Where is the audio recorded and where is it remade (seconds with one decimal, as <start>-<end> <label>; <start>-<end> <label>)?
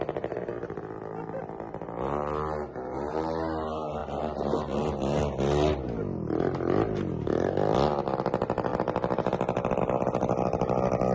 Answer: 0.0-11.1 recorded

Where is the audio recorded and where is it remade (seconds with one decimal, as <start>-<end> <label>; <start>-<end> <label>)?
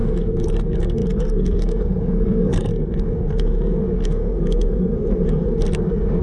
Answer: 0.0-6.2 remade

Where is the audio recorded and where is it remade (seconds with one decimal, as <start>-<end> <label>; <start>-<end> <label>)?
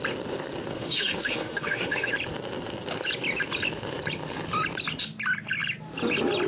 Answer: 0.0-0.7 recorded; 0.7-2.1 remade; 2.1-6.5 recorded